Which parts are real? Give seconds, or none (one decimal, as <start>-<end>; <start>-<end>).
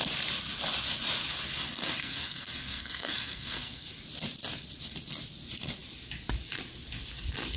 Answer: 0.0-2.0; 3.9-7.6